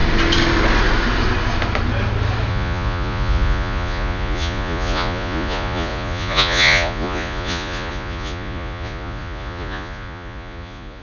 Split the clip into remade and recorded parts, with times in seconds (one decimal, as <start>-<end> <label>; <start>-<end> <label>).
0.0-2.5 recorded; 2.5-11.0 remade